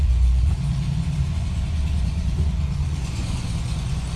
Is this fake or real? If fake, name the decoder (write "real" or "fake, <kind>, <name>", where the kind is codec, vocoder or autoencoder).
fake, vocoder, Vocos